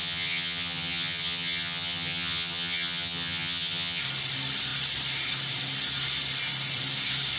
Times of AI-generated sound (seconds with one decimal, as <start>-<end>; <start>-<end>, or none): 0.0-4.0